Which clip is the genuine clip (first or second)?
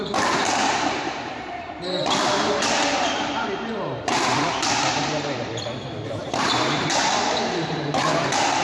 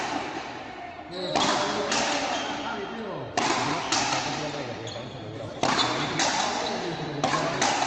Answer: second